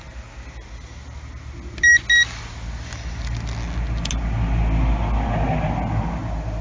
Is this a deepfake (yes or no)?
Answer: no